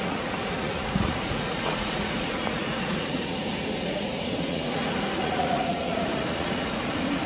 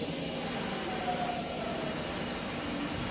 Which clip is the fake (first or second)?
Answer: first